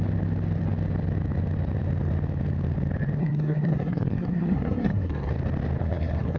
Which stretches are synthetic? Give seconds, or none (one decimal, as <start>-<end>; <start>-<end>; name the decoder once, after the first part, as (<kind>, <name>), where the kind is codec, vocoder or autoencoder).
3.2-5.3 (codec, SNAC); 5.8-6.4